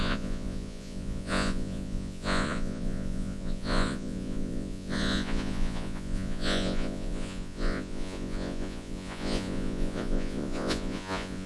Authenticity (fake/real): fake